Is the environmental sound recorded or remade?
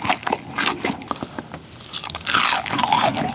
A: recorded